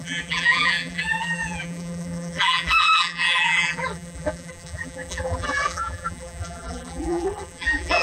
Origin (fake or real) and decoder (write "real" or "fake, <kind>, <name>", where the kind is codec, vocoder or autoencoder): fake, vocoder, BigVGAN v2